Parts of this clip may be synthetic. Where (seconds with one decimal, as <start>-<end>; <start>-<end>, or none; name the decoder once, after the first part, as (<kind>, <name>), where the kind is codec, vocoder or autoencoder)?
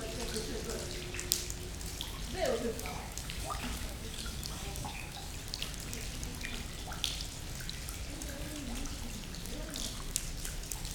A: 2.7-5.3 (codec, DAC)